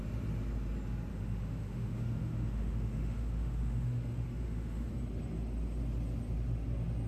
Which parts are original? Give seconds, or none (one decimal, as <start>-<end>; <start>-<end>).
0.0-1.1; 4.9-7.1